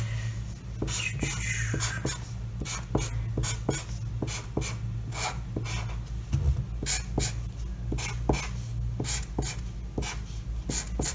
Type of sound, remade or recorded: recorded